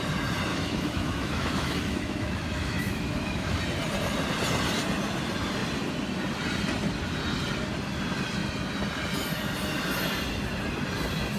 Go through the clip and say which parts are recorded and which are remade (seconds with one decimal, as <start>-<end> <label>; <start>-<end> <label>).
0.0-0.5 recorded; 0.5-3.6 remade; 3.6-11.4 recorded